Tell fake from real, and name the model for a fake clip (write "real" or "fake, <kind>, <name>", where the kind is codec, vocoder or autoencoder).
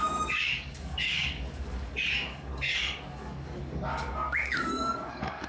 fake, codec, DAC